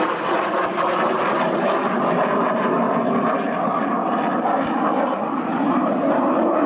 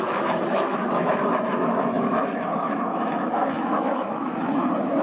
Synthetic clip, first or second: second